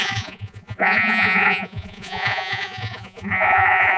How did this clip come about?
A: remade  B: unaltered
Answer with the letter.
A